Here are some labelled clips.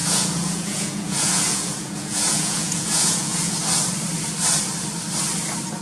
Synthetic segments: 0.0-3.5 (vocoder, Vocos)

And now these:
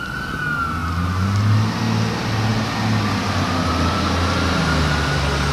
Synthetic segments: none

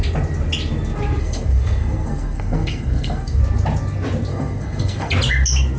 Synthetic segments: 1.2-3.4 (codec, SNAC); 4.3-5.1

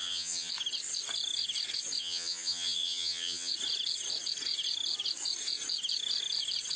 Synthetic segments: 0.0-0.5 (vocoder, HiFi-GAN); 2.0-3.5

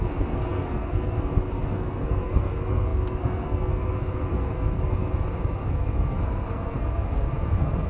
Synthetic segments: 0.0-7.9 (codec, SNAC)

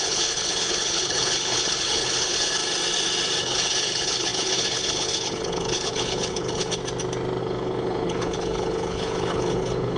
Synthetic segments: 0.0-2.6 (codec, HILCodec); 3.4-6.8; 7.4-10.0

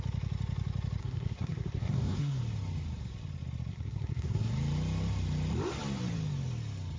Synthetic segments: 1.0-2.4 (codec, SNAC); 3.7-4.5

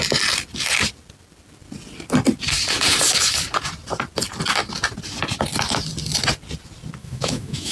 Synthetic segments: 7.0-7.7 (autoencoder, DAC-VAE)